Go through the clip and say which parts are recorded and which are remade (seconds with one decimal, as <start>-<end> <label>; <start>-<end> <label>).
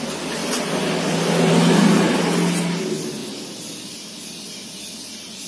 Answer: 0.0-5.5 recorded